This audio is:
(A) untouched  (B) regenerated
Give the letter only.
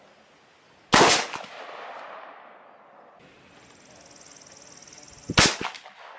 A